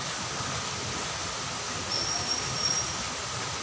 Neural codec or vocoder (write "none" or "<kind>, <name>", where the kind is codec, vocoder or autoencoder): none